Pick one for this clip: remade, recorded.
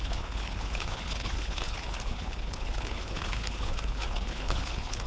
remade